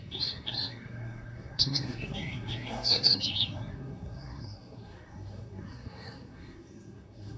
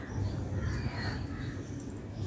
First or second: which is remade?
first